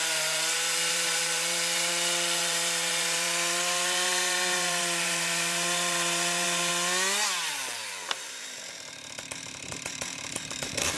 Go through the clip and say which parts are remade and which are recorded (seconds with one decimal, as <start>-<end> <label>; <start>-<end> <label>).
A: 0.0-6.7 remade; 6.7-7.5 recorded; 7.5-11.0 remade